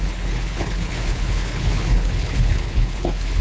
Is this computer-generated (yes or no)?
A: yes